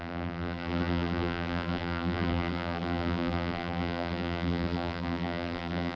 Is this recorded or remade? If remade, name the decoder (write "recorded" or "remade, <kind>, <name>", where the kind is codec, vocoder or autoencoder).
remade, vocoder, BigVGAN v2